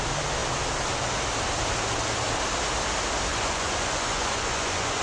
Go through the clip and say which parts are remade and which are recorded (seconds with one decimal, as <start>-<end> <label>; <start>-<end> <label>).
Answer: 0.0-3.3 recorded; 3.3-5.0 remade